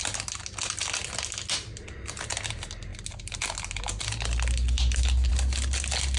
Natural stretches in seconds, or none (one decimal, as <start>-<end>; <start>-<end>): 0.0-6.2